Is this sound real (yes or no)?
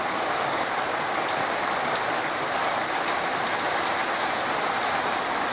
yes